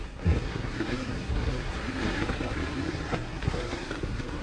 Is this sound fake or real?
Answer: fake